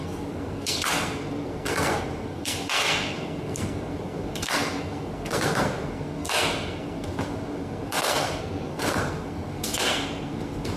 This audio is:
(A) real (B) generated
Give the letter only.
B